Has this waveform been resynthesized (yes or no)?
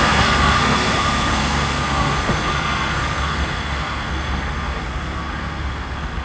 yes